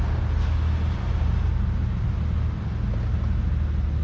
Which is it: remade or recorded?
recorded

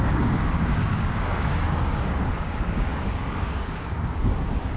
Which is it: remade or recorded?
remade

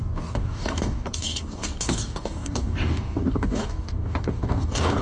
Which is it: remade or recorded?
remade